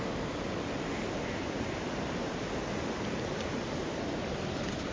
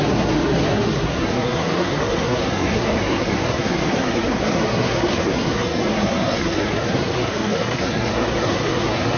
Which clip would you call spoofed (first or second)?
second